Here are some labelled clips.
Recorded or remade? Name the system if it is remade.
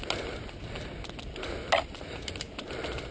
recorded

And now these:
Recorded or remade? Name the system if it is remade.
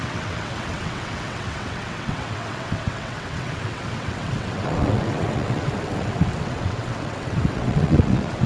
remade, vocoder, WaveNeXt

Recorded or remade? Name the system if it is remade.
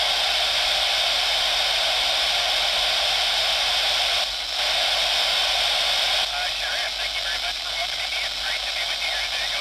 recorded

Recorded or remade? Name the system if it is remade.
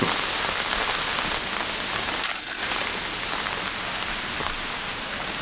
recorded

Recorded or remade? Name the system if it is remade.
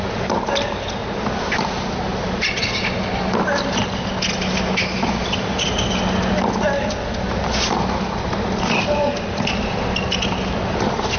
recorded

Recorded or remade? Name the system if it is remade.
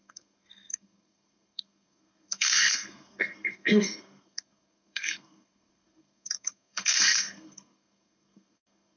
remade, codec, SNAC